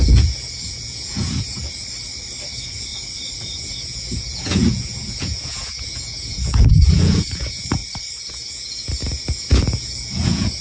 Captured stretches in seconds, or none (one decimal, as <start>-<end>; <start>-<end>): 1.6-2.5; 2.9-3.4; 7.8-8.3